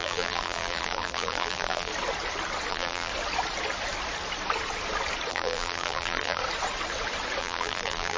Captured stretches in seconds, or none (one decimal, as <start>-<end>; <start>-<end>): 1.9-2.7; 3.1-5.3; 6.4-7.4